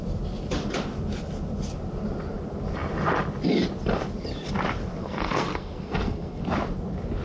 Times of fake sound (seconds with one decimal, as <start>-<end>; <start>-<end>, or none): 5.0-6.4